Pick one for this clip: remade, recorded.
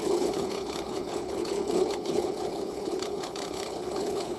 remade